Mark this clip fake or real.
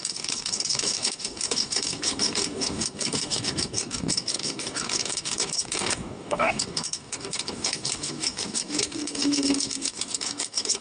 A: fake